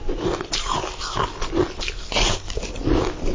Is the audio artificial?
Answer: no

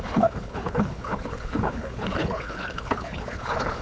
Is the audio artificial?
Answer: yes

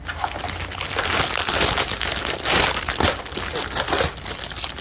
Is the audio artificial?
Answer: no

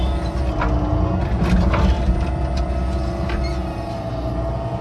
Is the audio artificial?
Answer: no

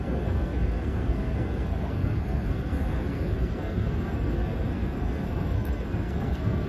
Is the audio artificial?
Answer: yes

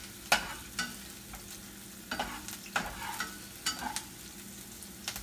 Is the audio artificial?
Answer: no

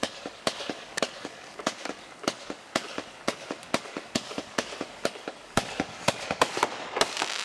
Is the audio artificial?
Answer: yes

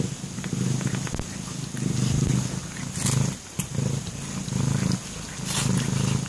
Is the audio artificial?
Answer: no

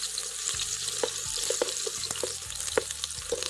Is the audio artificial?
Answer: no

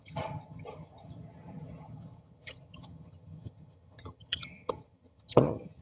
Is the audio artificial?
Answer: yes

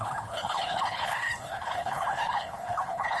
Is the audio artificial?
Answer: yes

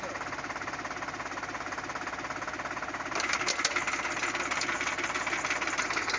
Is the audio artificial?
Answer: no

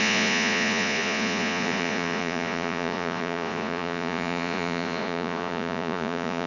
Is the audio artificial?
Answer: yes